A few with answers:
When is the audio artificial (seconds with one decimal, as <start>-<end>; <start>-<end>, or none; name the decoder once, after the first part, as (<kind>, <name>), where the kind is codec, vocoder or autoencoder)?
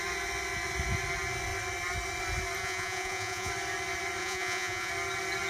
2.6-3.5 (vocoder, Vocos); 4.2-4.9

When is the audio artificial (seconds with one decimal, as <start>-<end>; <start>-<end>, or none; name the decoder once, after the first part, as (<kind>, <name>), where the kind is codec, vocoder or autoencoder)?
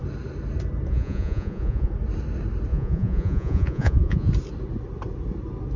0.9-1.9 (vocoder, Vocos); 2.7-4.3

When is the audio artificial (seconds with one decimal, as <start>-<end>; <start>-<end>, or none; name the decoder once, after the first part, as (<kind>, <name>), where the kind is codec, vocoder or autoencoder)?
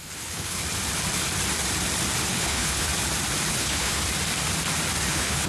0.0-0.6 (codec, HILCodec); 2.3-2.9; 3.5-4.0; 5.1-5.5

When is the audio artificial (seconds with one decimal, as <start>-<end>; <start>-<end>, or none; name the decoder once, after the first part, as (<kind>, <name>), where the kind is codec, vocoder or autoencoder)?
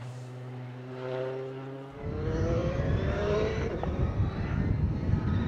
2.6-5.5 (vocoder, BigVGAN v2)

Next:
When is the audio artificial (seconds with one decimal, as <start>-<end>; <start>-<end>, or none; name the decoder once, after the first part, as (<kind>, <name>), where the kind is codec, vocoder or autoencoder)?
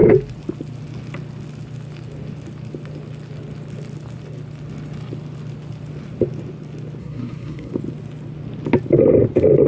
7.0-7.7 (codec, SNAC)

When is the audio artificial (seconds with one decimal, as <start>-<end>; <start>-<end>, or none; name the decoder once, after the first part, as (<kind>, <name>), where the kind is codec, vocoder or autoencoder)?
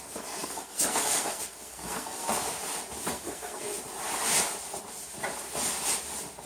0.0-2.4 (codec, SNAC); 3.1-3.7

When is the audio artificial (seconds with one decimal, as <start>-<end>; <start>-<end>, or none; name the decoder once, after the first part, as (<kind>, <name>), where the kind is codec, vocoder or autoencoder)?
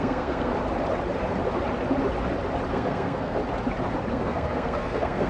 0.0-0.5 (codec, SNAC); 2.7-3.4; 4.1-5.3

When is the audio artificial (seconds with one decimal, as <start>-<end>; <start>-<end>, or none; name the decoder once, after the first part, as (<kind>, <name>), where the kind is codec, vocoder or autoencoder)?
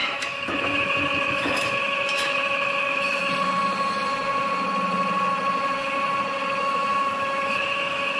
0.0-3.2 (autoencoder, DAC-VAE); 6.6-8.2